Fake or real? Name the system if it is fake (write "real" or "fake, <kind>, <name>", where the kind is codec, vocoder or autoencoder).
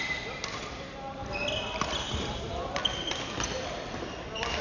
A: real